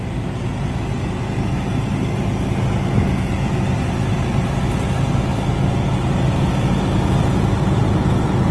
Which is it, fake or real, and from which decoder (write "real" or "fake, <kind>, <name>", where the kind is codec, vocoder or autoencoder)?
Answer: real